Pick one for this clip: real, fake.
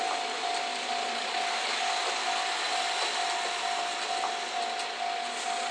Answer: real